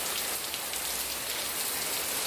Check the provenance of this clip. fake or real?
real